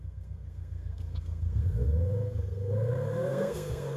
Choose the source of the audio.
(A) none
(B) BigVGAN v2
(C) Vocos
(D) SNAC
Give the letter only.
D